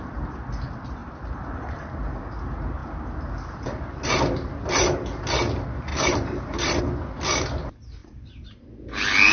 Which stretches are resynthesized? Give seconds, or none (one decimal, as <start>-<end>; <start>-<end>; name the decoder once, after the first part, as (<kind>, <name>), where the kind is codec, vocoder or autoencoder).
1.0-2.2 (vocoder, BigVGAN v2); 5.9-6.8; 8.0-8.6